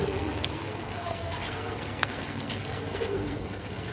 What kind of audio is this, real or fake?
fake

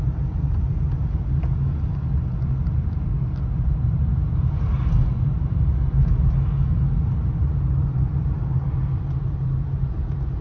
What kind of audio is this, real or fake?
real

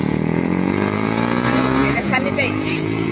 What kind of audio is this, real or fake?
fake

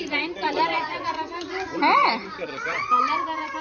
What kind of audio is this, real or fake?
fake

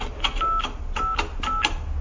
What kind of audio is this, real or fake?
real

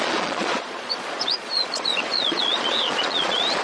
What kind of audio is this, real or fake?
fake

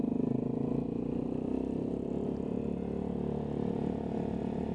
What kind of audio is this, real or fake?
real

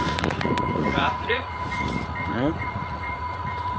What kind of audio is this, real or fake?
fake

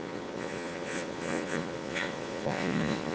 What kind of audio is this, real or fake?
fake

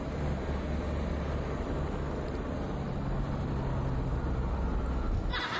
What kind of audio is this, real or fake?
real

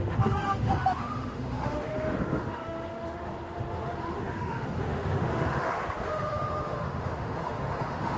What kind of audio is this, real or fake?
fake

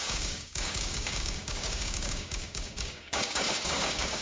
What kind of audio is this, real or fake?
fake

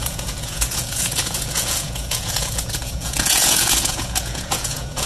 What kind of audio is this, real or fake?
fake